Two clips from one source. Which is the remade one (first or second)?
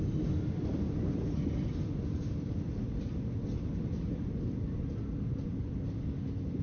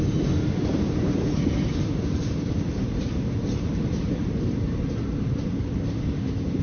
second